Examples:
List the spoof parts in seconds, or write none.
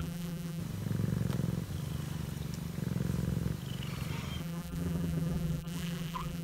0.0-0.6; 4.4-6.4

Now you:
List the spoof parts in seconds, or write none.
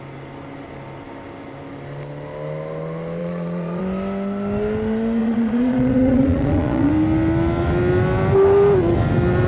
3.2-3.8; 5.2-6.9